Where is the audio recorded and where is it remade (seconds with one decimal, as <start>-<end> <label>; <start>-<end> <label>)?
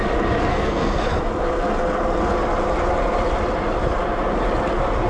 0.0-0.5 recorded; 0.5-1.2 remade; 1.2-5.1 recorded